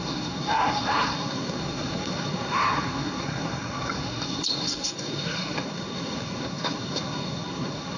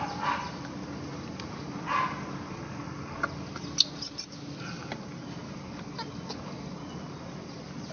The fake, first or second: first